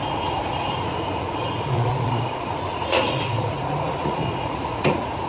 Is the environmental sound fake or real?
fake